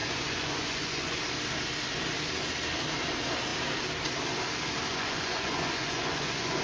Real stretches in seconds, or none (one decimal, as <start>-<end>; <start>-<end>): 1.2-4.9